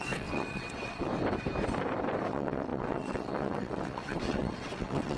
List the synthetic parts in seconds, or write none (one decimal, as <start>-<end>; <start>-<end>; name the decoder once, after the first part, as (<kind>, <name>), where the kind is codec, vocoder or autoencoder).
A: 0.0-1.1 (vocoder, WaveNeXt); 2.3-5.2